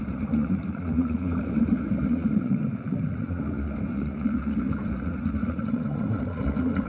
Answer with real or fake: fake